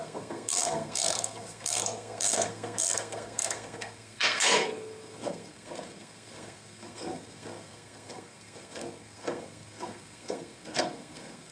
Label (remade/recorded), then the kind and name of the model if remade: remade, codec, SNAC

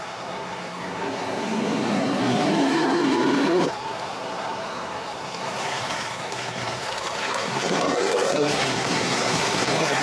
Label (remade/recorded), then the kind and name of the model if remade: remade, codec, SNAC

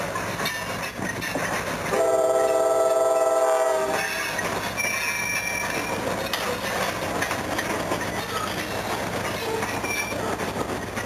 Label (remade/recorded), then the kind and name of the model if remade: recorded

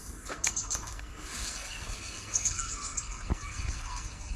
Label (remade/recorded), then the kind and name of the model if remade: remade, codec, SNAC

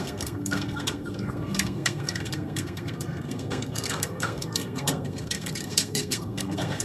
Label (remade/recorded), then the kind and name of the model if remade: remade, codec, SNAC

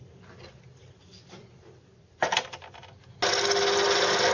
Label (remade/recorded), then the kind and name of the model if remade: recorded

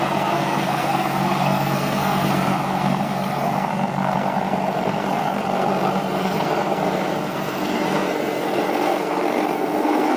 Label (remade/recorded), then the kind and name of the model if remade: remade, codec, SNAC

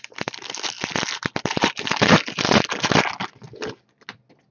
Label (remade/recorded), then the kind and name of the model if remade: recorded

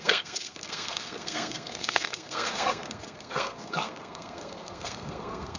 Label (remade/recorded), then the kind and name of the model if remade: remade, codec, SNAC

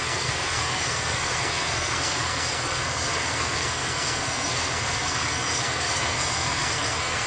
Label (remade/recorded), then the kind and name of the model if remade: remade, codec, SNAC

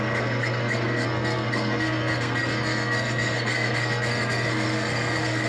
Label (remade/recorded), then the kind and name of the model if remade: remade, codec, SNAC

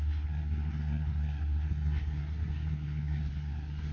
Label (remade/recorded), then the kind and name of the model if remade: remade, codec, SNAC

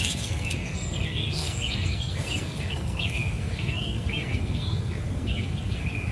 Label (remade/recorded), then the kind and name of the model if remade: remade, codec, SNAC